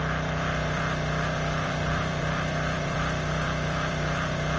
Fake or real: fake